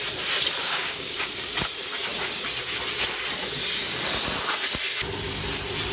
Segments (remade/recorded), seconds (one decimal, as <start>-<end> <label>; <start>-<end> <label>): 0.0-0.6 recorded; 0.6-1.3 remade; 1.3-5.9 recorded